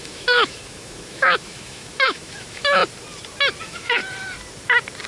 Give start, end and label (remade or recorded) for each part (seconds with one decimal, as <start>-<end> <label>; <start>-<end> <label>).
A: 0.0-2.8 remade; 2.8-3.6 recorded; 3.6-4.0 remade; 4.0-5.1 recorded